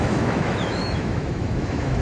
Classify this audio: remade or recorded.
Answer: remade